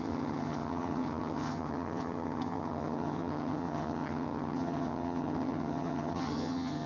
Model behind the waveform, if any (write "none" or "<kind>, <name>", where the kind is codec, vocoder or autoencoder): vocoder, HiFi-GAN